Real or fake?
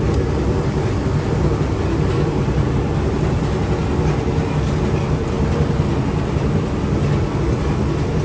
real